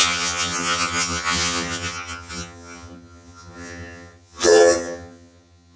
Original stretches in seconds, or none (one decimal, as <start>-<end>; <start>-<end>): none